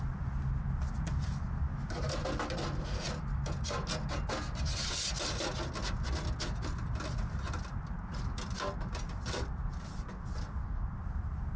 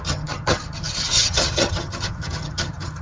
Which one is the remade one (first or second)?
second